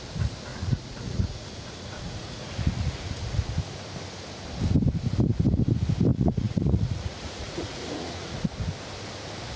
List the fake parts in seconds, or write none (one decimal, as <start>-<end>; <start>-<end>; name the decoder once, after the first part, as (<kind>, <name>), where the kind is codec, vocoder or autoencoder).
0.5-3.5 (vocoder, Vocos); 6.1-8.5